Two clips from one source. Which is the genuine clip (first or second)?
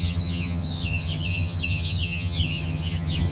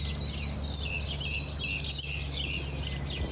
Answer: second